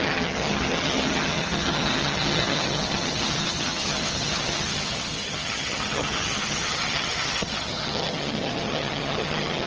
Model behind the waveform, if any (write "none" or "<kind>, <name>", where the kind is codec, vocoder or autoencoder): vocoder, HiFi-GAN